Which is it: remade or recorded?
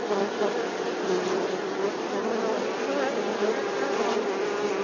recorded